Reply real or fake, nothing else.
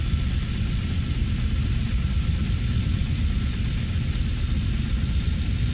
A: real